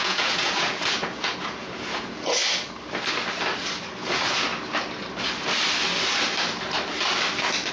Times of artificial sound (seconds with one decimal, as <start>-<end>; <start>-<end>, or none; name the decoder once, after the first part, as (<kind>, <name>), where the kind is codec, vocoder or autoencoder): 0.0-2.4 (vocoder, Vocos); 4.1-4.5